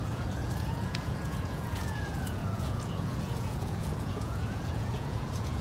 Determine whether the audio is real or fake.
fake